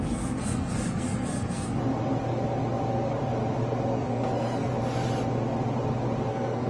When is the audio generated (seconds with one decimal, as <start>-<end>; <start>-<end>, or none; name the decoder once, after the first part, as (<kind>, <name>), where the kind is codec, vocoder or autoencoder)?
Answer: 0.0-1.7 (codec, SNAC); 3.9-4.7; 6.3-6.7